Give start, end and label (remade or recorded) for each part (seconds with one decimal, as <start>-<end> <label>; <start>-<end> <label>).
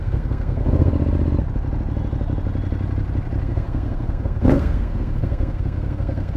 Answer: 0.0-0.9 remade; 0.9-3.4 recorded; 3.4-6.4 remade